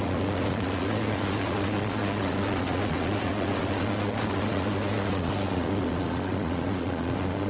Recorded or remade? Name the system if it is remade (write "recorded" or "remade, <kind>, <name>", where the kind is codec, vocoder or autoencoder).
remade, vocoder, Vocos